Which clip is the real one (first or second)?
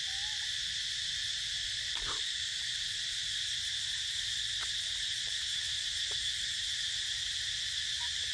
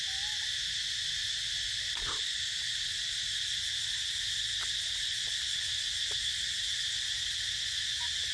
second